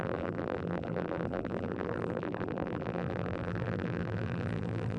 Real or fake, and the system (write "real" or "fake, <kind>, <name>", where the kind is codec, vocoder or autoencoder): fake, vocoder, BigVGAN v2